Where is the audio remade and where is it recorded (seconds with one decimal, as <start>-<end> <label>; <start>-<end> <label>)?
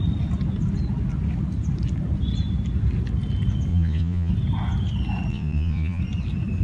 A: 0.0-3.7 recorded; 3.7-4.3 remade; 4.3-5.3 recorded; 5.3-6.0 remade; 6.0-6.6 recorded